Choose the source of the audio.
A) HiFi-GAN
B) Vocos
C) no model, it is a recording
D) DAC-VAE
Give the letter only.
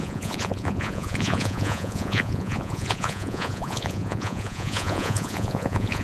B